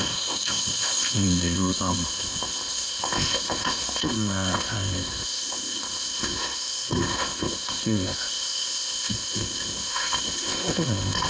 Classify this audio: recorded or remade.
remade